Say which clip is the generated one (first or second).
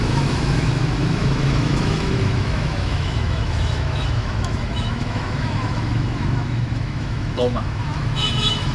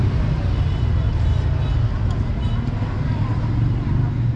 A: first